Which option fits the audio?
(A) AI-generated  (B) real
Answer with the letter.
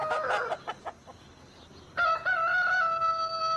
B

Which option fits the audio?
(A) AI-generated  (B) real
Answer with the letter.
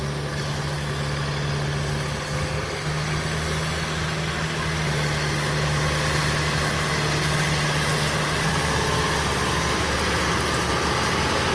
B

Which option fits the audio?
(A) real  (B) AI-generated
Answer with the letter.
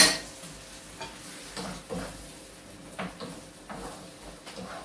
A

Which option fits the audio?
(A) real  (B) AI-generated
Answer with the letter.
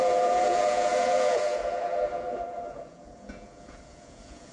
B